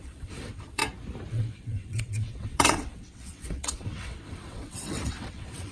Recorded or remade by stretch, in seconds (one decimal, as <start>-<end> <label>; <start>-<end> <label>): 0.0-0.8 remade; 0.8-1.3 recorded; 1.3-5.7 remade